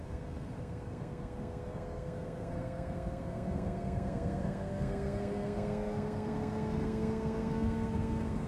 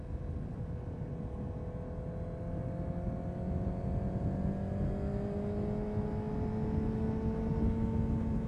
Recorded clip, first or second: second